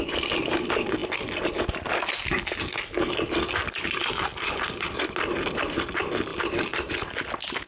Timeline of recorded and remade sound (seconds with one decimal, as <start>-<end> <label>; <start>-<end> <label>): 0.0-7.7 recorded